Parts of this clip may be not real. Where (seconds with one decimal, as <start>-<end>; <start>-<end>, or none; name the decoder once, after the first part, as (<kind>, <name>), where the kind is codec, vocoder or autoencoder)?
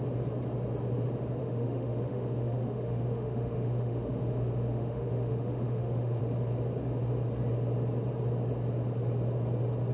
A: 1.4-6.2 (autoencoder, DAC-VAE)